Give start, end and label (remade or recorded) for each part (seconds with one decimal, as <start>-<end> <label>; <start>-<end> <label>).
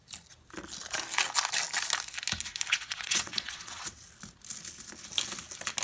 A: 0.0-2.7 recorded; 2.7-4.0 remade; 4.0-5.8 recorded